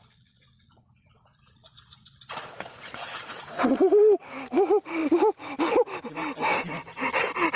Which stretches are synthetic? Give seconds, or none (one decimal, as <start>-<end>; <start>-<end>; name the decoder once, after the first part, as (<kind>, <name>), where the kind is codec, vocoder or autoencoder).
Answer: 0.0-3.4 (vocoder, Vocos)